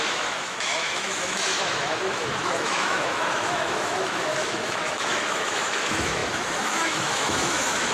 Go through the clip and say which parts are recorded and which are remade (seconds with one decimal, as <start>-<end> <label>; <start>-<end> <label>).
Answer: 0.0-7.9 remade